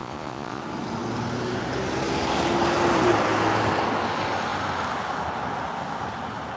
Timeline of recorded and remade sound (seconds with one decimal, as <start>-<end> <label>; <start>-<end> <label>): 0.0-0.6 remade; 0.6-6.6 recorded